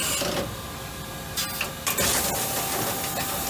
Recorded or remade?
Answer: recorded